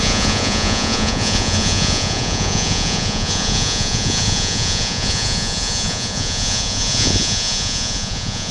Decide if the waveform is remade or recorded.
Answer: remade